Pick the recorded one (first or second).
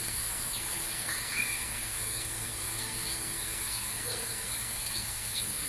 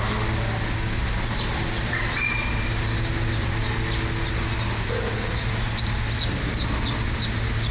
second